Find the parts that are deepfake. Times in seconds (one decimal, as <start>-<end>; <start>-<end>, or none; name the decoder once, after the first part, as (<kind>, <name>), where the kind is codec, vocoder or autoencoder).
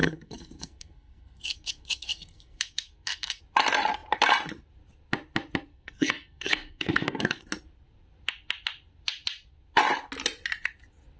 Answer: 0.0-3.4 (codec, SNAC); 5.7-7.4